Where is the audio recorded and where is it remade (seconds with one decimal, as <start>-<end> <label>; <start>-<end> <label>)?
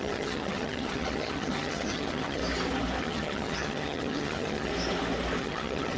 0.0-2.4 remade; 2.4-3.0 recorded; 3.0-4.7 remade; 4.7-5.4 recorded; 5.4-6.0 remade